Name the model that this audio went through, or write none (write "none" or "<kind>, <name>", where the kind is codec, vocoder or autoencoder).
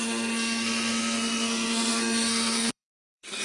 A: codec, SNAC